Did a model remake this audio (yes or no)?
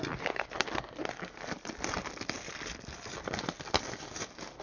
no